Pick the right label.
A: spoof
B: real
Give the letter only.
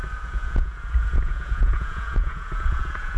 A